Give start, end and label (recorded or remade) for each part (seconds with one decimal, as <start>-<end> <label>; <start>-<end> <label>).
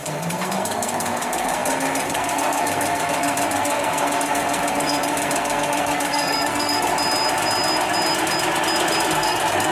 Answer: 0.0-6.9 remade; 6.9-9.1 recorded; 9.1-9.7 remade